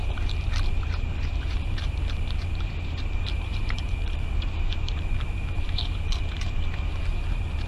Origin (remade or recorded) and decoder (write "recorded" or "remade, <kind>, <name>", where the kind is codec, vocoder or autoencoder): remade, vocoder, BigVGAN v2